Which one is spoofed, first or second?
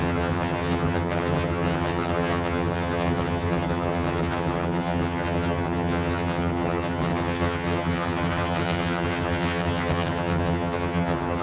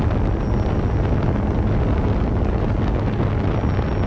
first